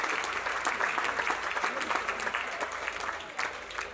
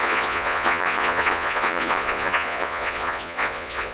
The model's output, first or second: second